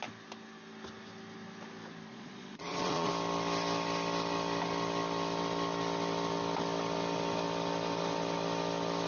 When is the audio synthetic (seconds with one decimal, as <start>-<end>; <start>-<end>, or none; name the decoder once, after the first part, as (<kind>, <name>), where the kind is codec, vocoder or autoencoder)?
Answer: 2.1-3.1 (vocoder, Vocos)